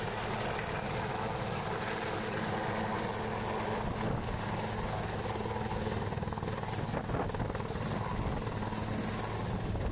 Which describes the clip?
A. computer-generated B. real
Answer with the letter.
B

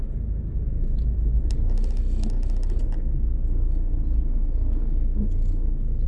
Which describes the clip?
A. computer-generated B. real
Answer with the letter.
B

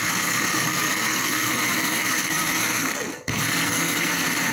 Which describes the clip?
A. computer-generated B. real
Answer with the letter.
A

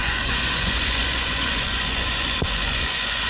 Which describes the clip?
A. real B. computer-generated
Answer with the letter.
B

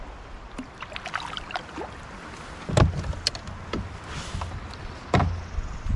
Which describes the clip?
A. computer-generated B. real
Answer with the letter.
B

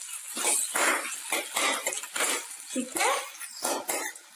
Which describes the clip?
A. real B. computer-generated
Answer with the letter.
A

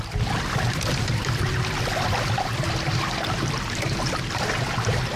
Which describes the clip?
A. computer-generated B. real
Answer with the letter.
A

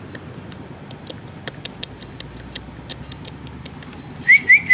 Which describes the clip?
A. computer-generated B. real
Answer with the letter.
B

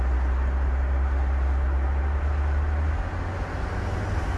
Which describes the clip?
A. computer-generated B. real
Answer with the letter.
B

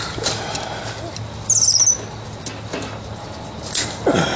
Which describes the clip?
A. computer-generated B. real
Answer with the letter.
B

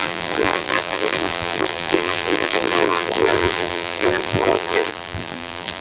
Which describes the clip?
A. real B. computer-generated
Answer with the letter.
B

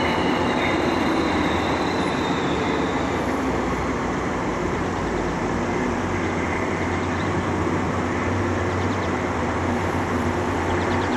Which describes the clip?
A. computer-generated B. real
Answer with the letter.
A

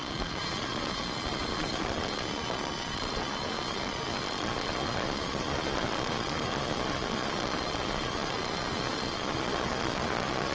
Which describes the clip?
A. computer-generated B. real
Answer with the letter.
A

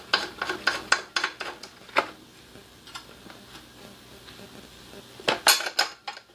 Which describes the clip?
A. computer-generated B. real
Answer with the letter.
B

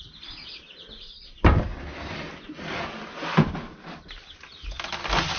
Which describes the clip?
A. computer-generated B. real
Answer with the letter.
B